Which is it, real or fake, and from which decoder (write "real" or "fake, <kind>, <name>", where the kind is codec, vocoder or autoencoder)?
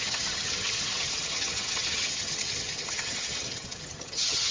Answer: fake, vocoder, HiFi-GAN